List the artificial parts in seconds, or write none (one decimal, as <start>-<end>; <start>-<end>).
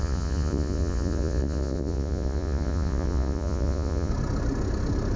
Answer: 0.0-4.1